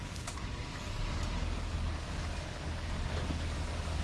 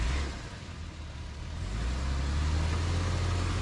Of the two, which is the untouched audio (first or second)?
second